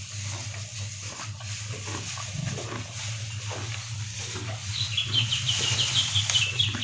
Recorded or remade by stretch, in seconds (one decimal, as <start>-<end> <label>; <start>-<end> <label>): 0.0-4.1 recorded; 4.1-4.7 remade; 4.7-6.8 recorded